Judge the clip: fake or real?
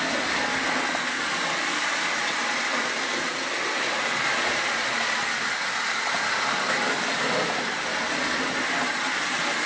real